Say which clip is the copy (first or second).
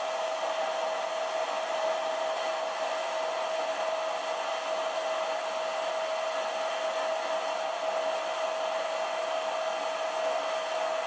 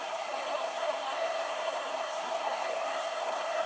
second